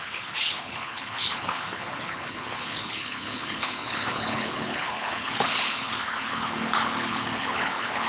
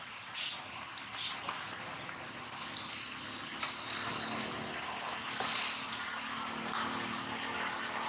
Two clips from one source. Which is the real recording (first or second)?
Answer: second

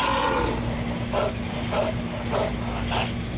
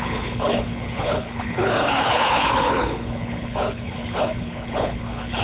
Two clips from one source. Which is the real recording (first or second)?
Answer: first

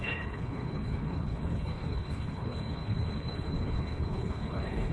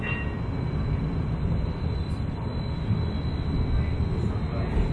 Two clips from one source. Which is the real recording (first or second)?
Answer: second